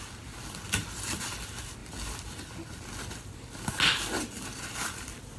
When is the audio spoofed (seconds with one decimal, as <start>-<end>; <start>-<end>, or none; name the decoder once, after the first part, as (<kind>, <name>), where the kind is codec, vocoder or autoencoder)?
none